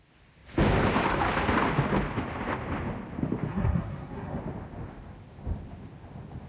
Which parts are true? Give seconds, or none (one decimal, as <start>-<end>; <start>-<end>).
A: 0.0-3.5; 4.4-6.5

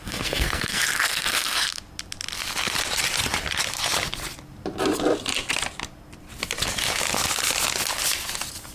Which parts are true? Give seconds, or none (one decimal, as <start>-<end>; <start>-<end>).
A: 1.8-8.7

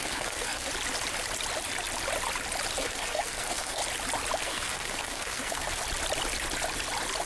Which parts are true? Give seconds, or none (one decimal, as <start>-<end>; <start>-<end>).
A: 0.7-2.8; 3.8-4.4; 5.8-7.2

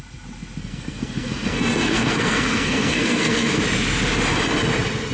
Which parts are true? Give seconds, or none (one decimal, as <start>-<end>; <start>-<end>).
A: 0.0-0.6; 3.6-5.1

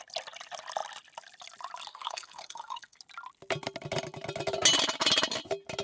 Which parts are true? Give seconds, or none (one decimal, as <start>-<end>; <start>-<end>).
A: 0.0-1.9; 3.0-5.8